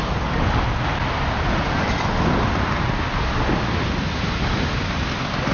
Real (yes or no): yes